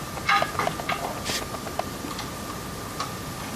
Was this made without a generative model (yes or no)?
yes